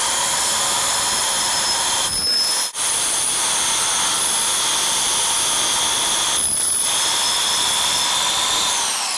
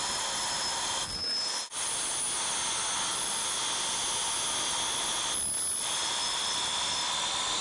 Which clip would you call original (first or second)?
second